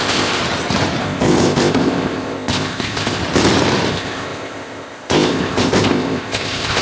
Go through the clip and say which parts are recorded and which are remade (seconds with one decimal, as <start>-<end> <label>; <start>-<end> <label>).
0.0-0.4 remade; 0.4-1.0 recorded; 1.0-3.2 remade; 3.2-3.9 recorded; 3.9-6.8 remade